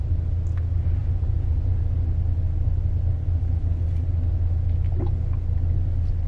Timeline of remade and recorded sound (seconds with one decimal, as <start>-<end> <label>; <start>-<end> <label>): 0.0-1.0 recorded; 1.0-1.7 remade; 1.7-6.3 recorded